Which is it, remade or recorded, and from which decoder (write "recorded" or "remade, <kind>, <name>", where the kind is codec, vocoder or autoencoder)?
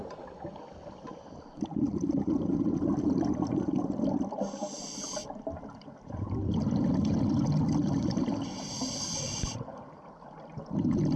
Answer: recorded